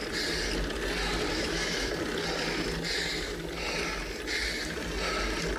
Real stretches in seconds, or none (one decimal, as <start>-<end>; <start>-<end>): 0.0-1.3; 1.9-5.6